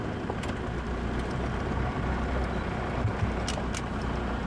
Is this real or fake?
real